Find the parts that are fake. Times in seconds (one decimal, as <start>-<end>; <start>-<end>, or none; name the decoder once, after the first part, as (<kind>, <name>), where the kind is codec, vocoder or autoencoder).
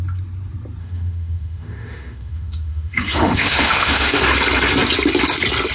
0.8-4.2 (autoencoder, DAC-VAE)